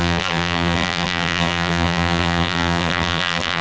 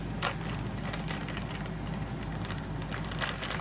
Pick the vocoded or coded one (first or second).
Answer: first